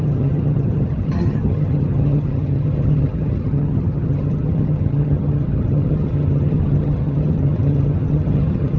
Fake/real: fake